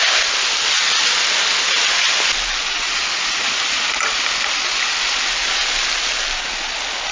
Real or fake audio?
real